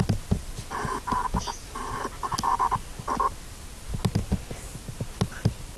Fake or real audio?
real